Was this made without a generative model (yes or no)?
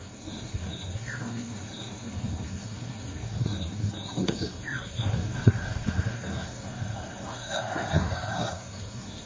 no